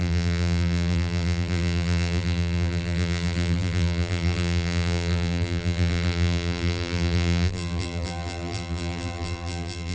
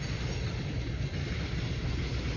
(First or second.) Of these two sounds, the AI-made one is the first